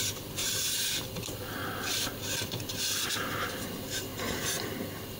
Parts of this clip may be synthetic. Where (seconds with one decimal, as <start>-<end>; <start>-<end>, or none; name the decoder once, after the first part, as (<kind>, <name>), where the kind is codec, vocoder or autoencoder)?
0.0-1.6 (vocoder, BigVGAN v2); 3.5-4.1; 4.8-5.2